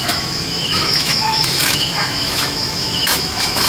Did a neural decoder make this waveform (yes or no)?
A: yes